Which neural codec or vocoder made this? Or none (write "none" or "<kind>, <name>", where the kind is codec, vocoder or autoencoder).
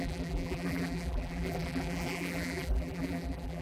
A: vocoder, BigVGAN v2